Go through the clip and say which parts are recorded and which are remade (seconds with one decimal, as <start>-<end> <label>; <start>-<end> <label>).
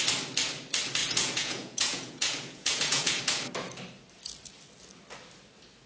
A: 0.0-1.0 recorded; 1.0-3.2 remade; 3.2-5.9 recorded